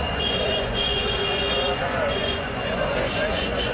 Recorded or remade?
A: remade